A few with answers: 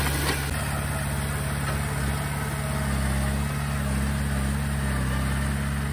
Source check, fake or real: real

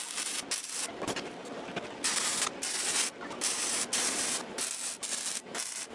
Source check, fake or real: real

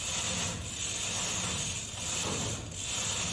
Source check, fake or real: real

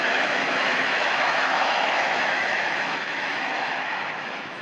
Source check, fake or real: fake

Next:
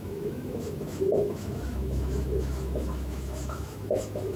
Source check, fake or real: fake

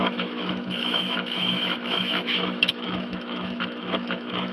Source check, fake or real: fake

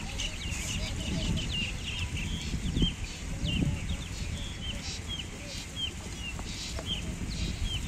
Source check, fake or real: real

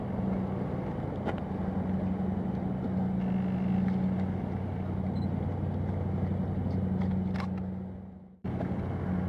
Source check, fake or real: real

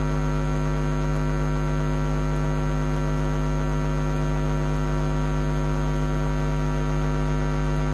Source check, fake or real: real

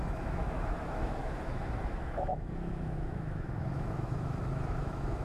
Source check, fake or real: fake